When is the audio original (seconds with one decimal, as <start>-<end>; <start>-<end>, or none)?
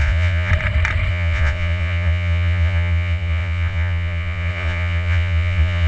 0.5-1.1